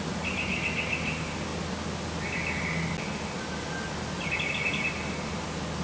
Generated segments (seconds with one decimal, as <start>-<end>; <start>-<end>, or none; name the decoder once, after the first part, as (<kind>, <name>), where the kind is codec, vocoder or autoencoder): none